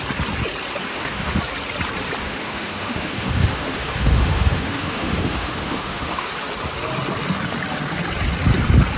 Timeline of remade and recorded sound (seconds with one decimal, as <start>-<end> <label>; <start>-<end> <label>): 0.0-0.9 recorded; 0.9-1.4 remade; 1.4-2.2 recorded; 2.2-6.3 remade; 6.3-9.0 recorded